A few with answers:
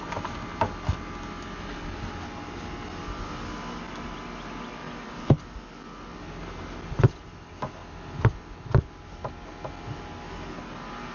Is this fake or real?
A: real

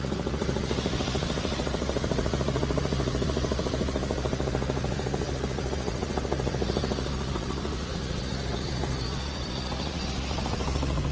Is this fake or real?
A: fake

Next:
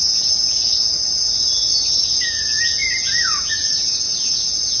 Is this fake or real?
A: fake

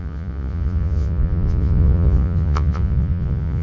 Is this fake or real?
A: fake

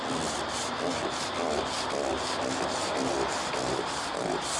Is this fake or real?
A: real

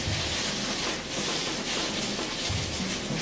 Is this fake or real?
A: real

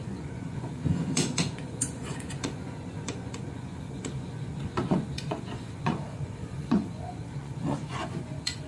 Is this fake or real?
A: fake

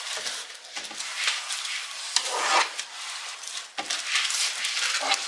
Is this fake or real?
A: real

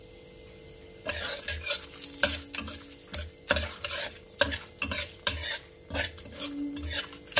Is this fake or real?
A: real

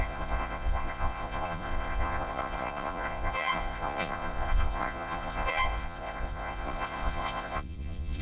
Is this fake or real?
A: fake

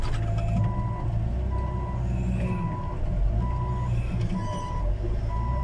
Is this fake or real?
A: real